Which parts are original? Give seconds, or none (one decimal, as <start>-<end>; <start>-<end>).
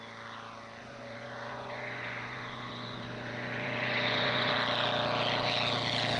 0.0-0.8; 4.5-6.2